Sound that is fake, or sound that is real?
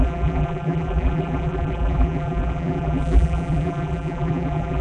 fake